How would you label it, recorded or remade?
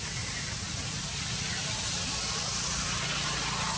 recorded